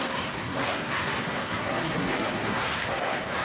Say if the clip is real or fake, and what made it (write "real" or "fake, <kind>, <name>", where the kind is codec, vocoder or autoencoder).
fake, codec, SNAC